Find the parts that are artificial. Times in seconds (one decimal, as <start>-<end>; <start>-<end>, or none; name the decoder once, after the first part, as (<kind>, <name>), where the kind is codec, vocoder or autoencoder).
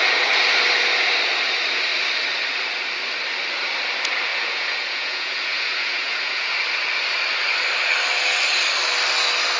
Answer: 4.3-6.5 (vocoder, Vocos)